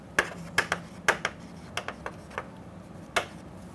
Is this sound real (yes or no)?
yes